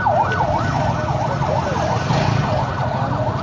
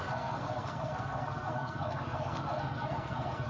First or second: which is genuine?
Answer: first